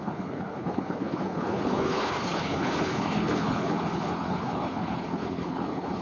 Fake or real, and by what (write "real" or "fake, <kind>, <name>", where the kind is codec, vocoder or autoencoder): fake, codec, HILCodec